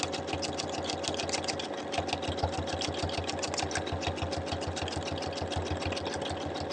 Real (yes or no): yes